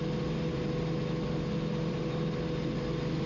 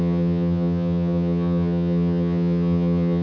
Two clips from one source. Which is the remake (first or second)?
second